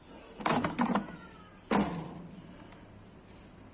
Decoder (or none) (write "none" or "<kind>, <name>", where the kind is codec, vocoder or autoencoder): none